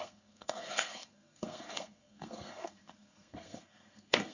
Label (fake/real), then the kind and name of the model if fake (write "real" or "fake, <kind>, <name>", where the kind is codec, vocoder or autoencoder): fake, codec, SNAC